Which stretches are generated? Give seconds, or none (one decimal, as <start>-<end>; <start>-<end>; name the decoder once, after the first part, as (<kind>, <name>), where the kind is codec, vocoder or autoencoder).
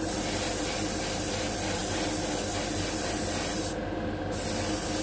none